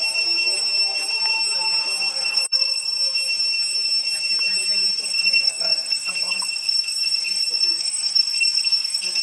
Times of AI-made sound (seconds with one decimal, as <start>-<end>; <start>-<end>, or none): 2.1-3.0; 5.0-9.2

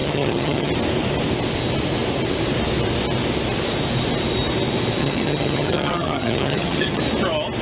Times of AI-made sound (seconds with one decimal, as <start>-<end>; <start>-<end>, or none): 0.0-0.7; 5.0-7.0